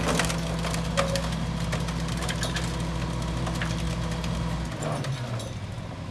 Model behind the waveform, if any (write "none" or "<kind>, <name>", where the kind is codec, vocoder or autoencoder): none